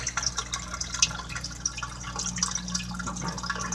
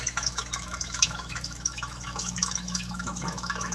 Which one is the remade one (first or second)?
second